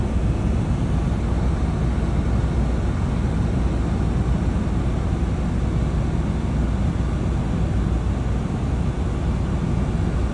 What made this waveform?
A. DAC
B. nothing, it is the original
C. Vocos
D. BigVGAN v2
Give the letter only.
B